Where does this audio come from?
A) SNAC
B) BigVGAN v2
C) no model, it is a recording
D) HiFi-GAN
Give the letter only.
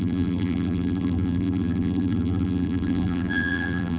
B